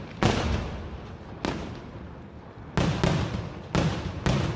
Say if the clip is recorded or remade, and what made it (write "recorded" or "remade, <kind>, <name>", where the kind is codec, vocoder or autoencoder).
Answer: recorded